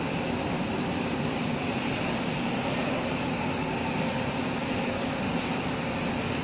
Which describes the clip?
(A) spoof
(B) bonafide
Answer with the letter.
B